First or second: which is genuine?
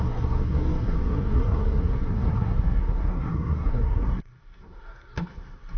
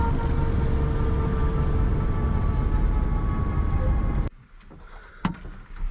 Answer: second